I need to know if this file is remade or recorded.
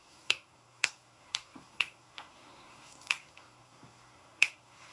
remade